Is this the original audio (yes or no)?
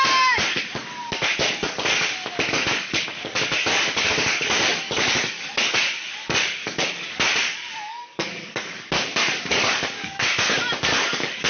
no